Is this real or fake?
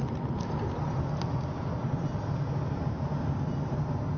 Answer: real